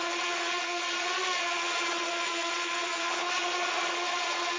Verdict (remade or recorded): remade